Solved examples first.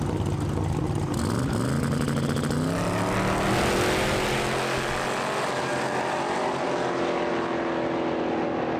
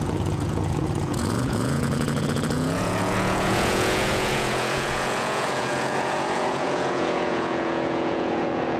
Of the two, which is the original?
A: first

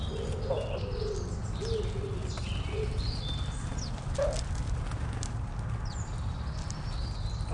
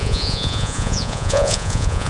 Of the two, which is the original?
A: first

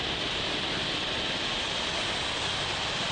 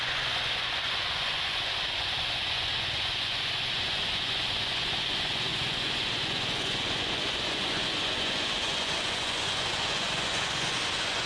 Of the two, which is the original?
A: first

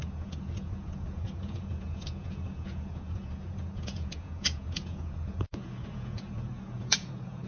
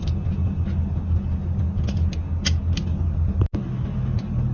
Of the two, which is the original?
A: second